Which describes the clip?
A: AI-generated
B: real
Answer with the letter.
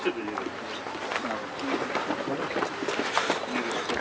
B